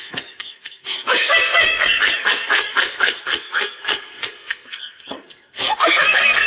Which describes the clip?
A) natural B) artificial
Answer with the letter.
B